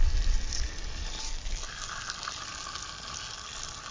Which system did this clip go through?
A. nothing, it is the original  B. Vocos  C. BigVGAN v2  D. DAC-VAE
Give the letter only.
A